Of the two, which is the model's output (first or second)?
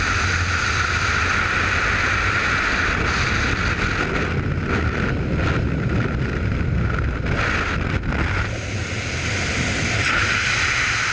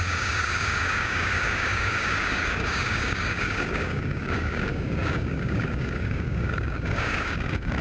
second